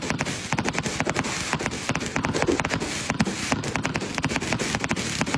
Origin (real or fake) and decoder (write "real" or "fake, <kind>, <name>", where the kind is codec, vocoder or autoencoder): real